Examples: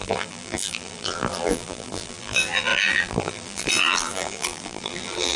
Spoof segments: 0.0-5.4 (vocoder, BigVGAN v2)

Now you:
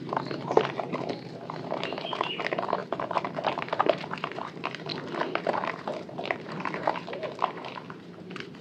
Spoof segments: 0.0-4.9 (vocoder, BigVGAN v2); 5.4-8.6

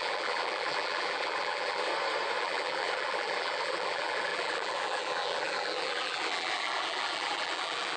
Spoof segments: 0.0-1.9 (vocoder, BigVGAN v2); 2.4-8.0